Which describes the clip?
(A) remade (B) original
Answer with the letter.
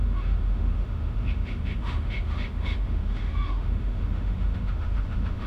A